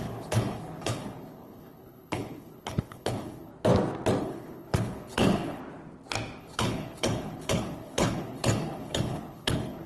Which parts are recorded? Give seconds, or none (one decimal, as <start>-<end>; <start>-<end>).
3.5-4.2; 5.6-6.4